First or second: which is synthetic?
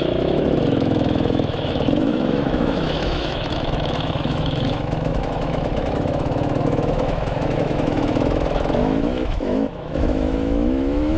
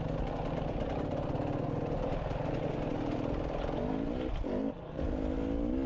first